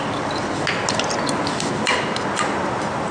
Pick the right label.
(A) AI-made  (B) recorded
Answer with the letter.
B